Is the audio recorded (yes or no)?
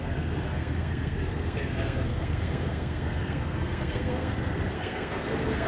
no